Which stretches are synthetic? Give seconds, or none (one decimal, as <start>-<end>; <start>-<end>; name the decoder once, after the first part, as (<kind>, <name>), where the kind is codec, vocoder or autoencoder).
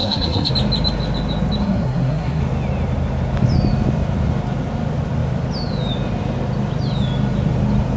0.0-0.5 (codec, SNAC); 1.6-2.4